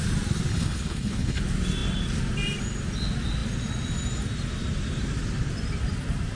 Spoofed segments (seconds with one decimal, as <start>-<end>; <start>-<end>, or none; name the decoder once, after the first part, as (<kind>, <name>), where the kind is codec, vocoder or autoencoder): 0.5-1.4 (codec, HILCodec)